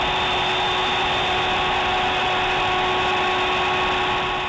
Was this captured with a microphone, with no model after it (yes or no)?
yes